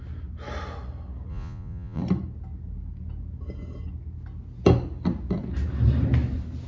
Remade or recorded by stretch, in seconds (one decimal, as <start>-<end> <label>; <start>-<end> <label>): 0.0-1.3 recorded; 1.3-2.0 remade; 2.0-6.7 recorded